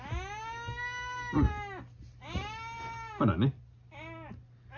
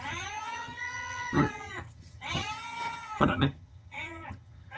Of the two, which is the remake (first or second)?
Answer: second